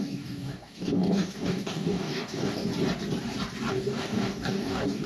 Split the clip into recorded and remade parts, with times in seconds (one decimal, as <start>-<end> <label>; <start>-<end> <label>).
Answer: 0.0-2.7 remade; 2.7-3.7 recorded; 3.7-5.1 remade